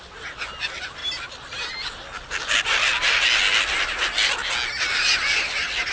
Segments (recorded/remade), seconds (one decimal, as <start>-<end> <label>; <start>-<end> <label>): 0.0-5.9 recorded